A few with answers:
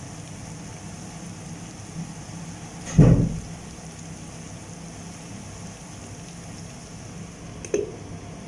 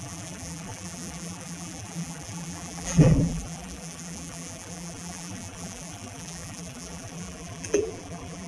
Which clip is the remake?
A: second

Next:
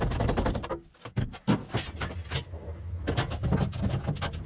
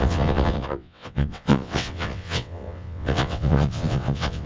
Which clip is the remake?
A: second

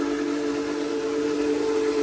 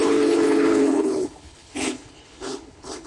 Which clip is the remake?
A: second